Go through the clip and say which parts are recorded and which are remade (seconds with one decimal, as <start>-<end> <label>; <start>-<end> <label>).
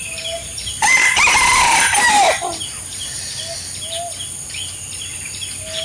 0.0-0.4 recorded; 0.4-3.2 remade; 3.2-5.8 recorded